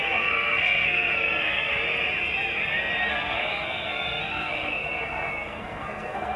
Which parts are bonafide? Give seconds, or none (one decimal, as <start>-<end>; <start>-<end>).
1.7-3.1